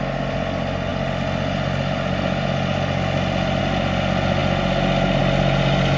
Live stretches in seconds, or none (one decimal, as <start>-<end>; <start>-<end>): 0.0-6.0